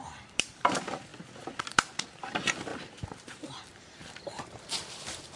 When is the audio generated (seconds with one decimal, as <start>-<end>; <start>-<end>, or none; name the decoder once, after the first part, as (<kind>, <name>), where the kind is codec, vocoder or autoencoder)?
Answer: 0.0-1.1 (vocoder, BigVGAN v2); 2.2-5.4